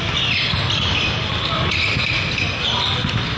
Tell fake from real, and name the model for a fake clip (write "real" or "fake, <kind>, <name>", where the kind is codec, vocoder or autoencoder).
real